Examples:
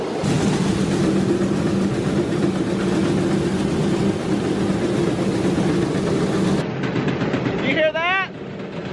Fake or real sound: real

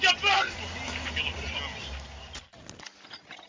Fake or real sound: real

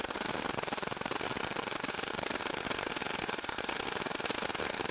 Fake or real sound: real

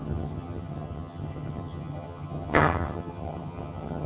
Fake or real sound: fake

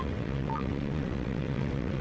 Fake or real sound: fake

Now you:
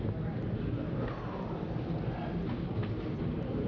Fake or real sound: real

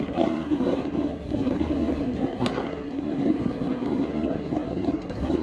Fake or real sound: fake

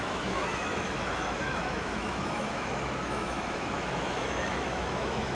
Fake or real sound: fake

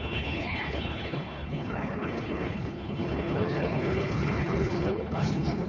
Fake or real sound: fake